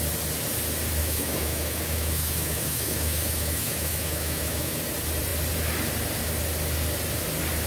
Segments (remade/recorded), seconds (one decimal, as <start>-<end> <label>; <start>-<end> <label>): 0.0-1.0 recorded; 1.0-4.8 remade; 4.8-7.7 recorded